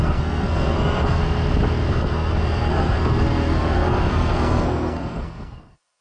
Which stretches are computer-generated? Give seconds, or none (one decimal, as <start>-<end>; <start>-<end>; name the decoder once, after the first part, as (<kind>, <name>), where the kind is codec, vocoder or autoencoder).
0.0-1.2 (codec, SNAC); 1.9-6.0